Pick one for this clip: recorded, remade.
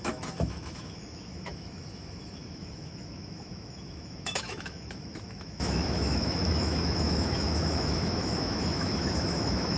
remade